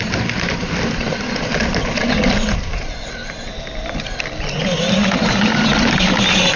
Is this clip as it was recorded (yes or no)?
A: yes